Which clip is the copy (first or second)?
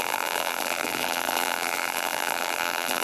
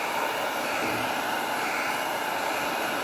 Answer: first